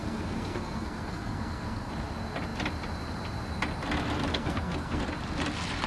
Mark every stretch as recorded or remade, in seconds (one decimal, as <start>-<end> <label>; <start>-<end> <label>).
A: 0.0-1.9 remade; 1.9-4.3 recorded; 4.3-5.0 remade; 5.0-5.9 recorded